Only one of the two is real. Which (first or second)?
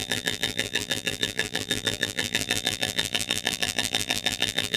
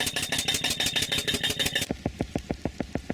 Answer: second